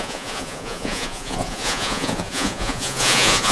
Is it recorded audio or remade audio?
remade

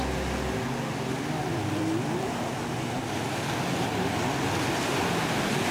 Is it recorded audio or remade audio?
recorded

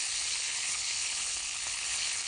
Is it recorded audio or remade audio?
remade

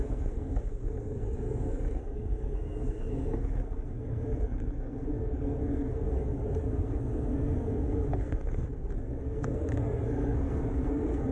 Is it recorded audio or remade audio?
remade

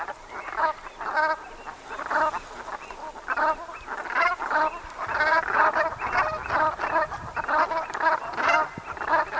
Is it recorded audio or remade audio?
recorded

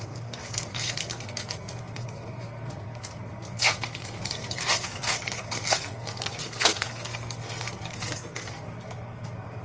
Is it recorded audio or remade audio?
remade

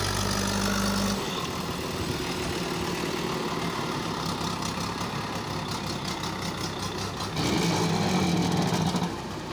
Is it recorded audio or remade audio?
recorded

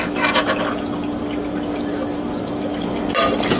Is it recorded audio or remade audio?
recorded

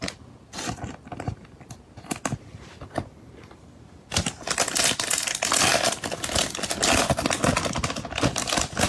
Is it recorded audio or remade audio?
recorded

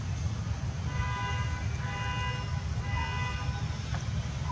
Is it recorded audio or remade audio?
recorded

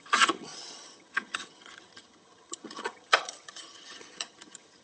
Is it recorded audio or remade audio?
remade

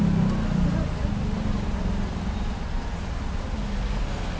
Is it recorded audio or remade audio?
recorded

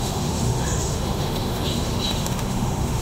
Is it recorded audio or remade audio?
remade